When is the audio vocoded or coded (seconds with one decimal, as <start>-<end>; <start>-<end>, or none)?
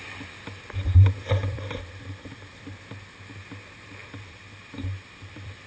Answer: 1.4-2.6; 4.0-5.7